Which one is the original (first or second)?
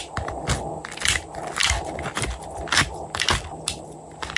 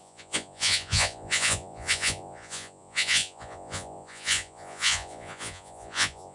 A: first